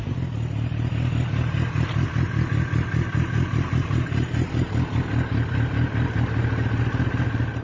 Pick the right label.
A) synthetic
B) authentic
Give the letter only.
B